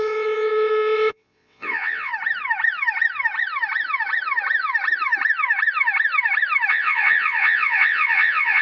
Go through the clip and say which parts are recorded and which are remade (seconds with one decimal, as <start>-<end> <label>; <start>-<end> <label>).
0.0-2.1 remade; 2.1-6.7 recorded; 6.7-8.6 remade